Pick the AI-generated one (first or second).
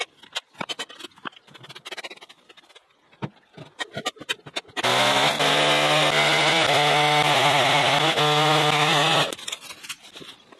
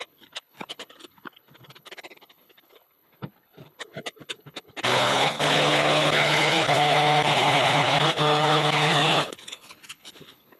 second